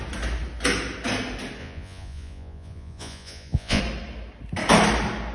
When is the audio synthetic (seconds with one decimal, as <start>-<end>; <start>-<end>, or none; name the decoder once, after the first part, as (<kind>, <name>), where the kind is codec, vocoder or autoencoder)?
1.6-3.8 (vocoder, Vocos)